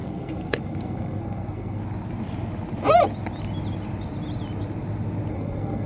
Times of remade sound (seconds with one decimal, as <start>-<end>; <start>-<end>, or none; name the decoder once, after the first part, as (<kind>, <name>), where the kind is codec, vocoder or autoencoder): 0.0-1.8 (codec, SNAC); 5.3-5.9